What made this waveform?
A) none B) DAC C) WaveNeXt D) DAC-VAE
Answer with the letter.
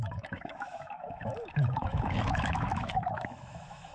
D